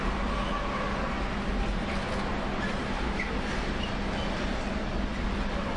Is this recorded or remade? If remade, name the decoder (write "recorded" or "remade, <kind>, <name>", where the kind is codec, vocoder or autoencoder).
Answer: recorded